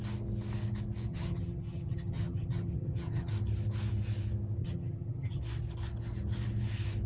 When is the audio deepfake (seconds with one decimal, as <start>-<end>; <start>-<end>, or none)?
1.1-3.3; 4.6-5.4